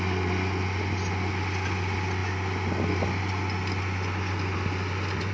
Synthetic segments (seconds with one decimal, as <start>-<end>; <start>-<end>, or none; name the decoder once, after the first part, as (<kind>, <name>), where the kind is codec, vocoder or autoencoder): none